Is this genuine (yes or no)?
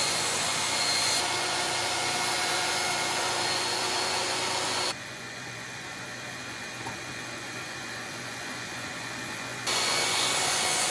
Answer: no